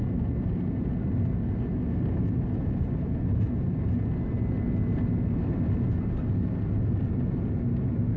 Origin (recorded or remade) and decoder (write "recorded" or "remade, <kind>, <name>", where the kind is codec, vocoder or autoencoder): recorded